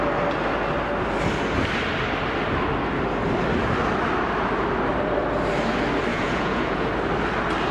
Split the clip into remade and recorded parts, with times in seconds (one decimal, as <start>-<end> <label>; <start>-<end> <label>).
0.0-6.1 recorded; 6.1-6.9 remade; 6.9-7.7 recorded